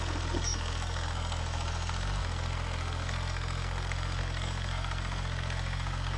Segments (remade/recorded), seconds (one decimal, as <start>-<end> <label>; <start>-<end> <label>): 0.0-6.2 remade